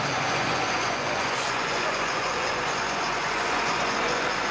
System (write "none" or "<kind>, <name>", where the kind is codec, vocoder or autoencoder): vocoder, Vocos